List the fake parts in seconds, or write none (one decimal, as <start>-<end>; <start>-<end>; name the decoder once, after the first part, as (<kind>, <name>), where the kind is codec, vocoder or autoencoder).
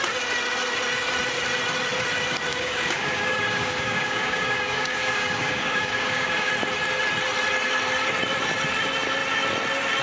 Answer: 2.5-6.5 (codec, DAC)